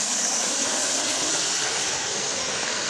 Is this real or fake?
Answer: fake